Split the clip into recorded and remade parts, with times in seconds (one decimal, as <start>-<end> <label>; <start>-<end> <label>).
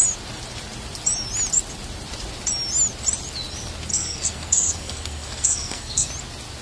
0.0-3.9 recorded; 3.9-6.1 remade; 6.1-6.6 recorded